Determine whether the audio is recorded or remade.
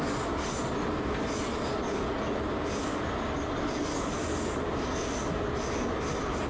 recorded